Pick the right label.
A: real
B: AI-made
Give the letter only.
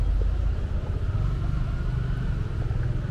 A